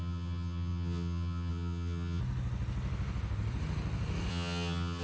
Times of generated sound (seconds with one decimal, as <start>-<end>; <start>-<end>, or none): 0.0-2.2; 4.3-5.0